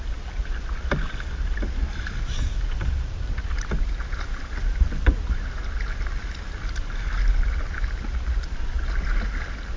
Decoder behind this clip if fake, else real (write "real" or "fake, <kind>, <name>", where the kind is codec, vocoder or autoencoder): real